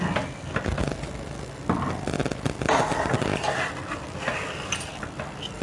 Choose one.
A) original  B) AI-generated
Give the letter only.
A